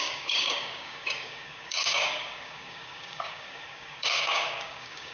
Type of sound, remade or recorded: remade